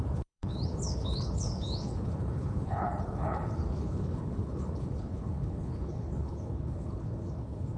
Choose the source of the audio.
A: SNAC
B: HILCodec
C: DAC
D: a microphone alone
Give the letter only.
B